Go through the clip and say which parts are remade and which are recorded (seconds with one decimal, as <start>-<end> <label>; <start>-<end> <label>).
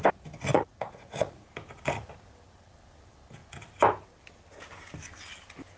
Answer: 0.0-0.5 recorded; 0.5-1.5 remade; 1.5-5.8 recorded